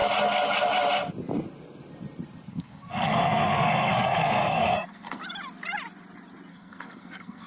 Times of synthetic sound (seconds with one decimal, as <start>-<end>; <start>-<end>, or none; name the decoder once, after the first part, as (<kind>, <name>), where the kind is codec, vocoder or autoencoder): 2.5-5.2 (codec, SNAC); 6.5-7.5